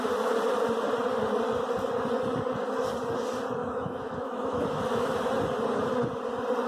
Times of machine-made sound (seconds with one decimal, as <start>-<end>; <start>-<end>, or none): 3.6-5.2